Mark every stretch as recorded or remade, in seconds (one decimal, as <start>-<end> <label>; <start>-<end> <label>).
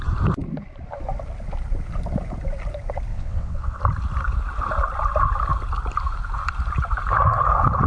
0.0-3.1 recorded; 3.1-3.8 remade; 3.8-7.9 recorded